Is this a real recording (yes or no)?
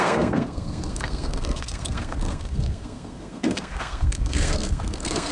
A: no